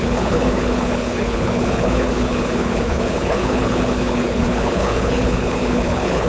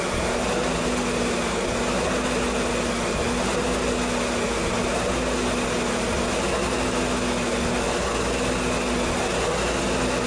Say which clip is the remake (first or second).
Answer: first